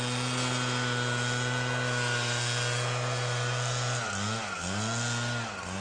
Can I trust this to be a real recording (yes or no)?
yes